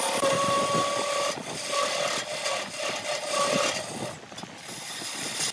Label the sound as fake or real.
real